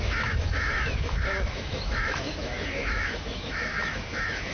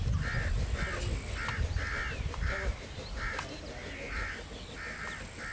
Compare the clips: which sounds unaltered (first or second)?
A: second